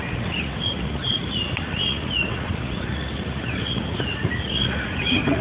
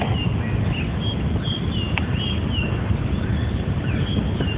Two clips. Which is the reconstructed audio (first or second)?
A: first